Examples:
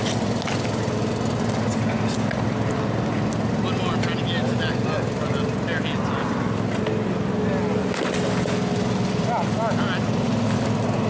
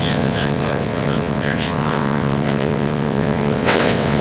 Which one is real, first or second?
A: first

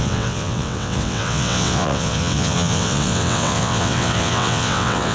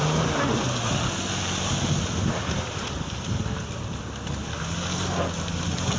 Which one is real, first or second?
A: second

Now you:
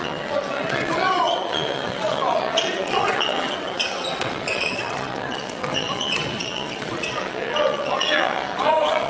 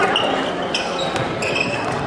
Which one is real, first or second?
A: second